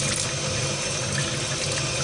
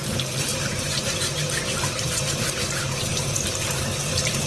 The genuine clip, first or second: first